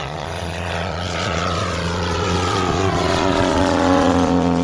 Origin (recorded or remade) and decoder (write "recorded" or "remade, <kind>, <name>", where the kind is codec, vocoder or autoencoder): remade, vocoder, Vocos